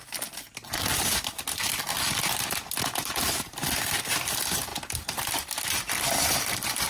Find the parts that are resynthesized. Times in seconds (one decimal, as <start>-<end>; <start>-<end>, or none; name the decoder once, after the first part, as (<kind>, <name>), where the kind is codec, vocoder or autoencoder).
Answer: none